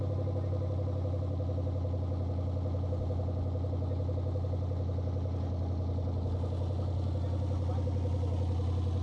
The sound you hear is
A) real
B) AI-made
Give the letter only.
A